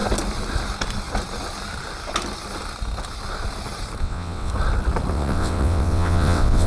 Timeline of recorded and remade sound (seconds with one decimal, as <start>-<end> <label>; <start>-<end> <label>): 0.0-4.0 recorded; 4.0-4.5 remade; 4.5-5.1 recorded; 5.1-6.7 remade